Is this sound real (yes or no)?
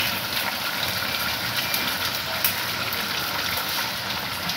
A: yes